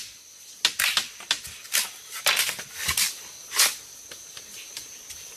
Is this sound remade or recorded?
recorded